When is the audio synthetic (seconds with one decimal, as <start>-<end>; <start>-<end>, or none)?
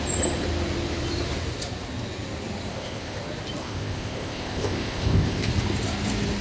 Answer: 2.7-3.2; 3.6-5.5